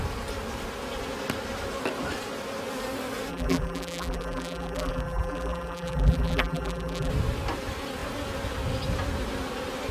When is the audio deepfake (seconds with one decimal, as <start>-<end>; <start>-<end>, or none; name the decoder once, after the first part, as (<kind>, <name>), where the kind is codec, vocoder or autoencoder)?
3.3-7.1 (vocoder, BigVGAN v2)